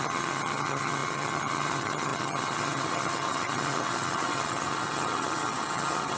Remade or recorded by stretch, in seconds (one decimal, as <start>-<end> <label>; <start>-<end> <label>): 0.0-6.2 remade